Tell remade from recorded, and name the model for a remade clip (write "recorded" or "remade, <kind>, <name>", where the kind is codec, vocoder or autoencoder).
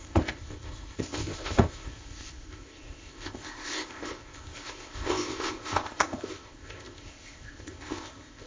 remade, codec, ZipCodec